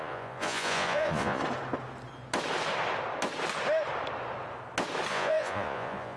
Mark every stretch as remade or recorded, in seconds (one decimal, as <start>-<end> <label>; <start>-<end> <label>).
0.0-1.4 remade; 1.4-5.1 recorded; 5.1-6.2 remade